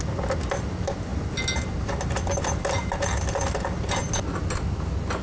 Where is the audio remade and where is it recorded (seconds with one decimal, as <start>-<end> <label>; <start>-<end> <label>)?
0.0-5.2 recorded